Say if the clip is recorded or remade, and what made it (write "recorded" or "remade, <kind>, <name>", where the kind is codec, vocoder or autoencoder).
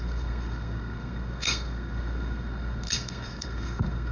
remade, codec, SNAC